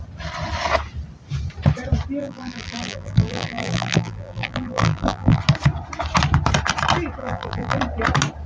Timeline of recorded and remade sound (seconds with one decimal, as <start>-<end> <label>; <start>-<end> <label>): 0.0-2.2 recorded; 2.2-5.4 remade; 5.4-7.2 recorded; 7.2-7.8 remade; 7.8-8.5 recorded